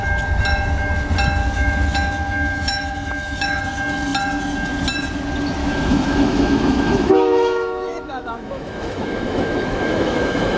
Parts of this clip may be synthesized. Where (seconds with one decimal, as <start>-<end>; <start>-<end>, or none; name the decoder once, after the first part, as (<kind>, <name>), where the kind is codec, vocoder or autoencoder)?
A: 1.4-3.6 (autoencoder, DAC-VAE); 5.6-10.6